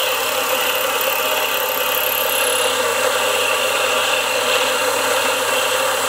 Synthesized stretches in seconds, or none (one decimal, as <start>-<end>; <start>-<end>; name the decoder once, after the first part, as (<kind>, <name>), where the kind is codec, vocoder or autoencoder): 0.0-1.2 (vocoder, BigVGAN v2); 2.9-3.8; 4.8-6.1